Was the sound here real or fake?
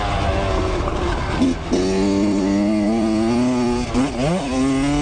real